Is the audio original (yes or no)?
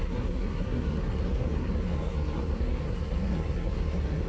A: no